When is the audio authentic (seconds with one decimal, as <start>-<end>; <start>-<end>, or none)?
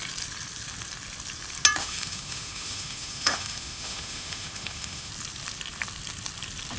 0.0-1.8; 5.1-6.8